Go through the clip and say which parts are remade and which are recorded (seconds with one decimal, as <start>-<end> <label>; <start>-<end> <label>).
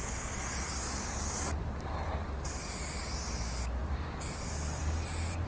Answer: 0.0-5.5 recorded